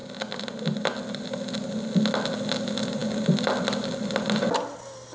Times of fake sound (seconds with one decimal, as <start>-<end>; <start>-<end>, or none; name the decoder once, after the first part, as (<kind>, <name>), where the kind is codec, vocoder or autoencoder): none